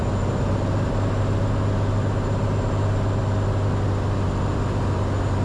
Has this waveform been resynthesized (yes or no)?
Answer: no